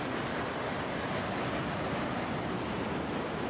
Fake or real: real